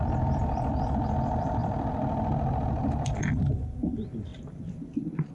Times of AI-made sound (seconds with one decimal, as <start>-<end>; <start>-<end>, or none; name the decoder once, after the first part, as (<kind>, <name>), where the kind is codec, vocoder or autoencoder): 1.6-3.4 (vocoder, BigVGAN v2); 4.3-5.3